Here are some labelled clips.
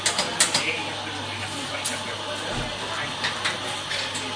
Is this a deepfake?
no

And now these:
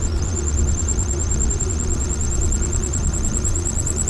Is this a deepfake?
yes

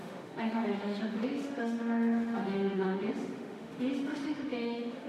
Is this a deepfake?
yes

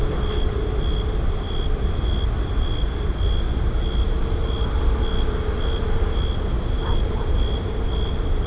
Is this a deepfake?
no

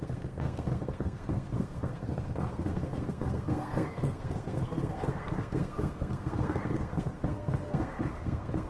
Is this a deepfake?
yes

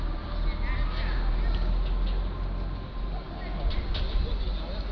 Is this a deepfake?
no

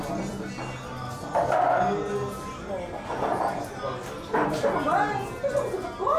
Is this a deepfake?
no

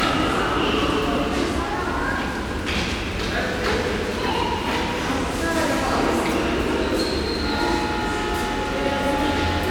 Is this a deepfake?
no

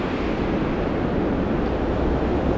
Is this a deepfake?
no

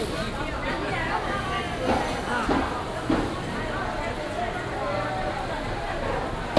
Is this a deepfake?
no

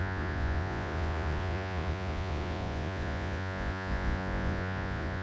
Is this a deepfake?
yes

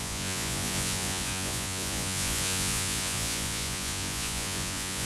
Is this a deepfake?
yes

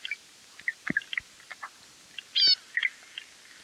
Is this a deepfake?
no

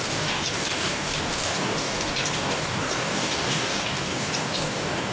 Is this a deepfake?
yes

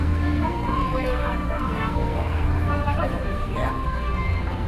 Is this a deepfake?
yes